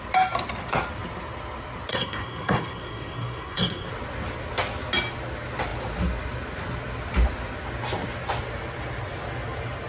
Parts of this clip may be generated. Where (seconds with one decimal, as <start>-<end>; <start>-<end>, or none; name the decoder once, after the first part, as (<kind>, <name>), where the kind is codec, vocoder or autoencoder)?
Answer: 1.9-3.9 (codec, SNAC)